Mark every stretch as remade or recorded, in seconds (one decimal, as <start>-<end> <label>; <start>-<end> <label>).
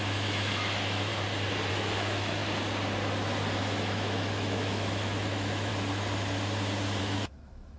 0.0-1.1 remade; 1.1-1.7 recorded; 1.7-2.4 remade; 2.4-3.6 recorded; 3.6-5.7 remade; 5.7-7.0 recorded; 7.0-7.8 remade